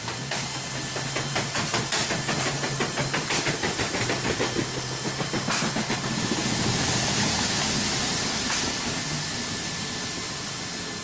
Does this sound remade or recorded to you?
recorded